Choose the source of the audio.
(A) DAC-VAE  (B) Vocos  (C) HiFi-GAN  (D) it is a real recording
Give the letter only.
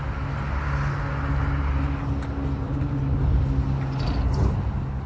D